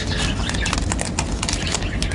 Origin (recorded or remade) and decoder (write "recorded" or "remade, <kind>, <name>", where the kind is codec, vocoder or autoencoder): recorded